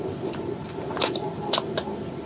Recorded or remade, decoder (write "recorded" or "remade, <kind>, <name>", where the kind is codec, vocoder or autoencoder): recorded